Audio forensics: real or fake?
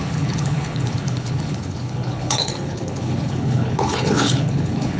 fake